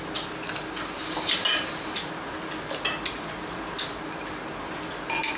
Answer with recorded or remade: recorded